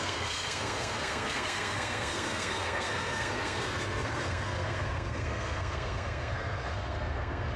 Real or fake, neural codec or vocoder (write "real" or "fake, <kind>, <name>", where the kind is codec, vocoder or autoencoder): fake, codec, SNAC